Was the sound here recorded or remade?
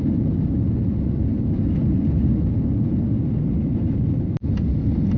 recorded